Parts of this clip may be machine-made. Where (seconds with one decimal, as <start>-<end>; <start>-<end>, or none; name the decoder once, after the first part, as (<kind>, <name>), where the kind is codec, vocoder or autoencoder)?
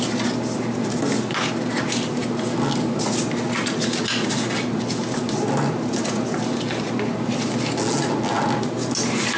none